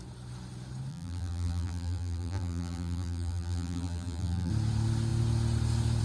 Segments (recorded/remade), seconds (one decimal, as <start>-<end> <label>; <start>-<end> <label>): 0.0-0.9 recorded; 0.9-4.5 remade; 4.5-6.0 recorded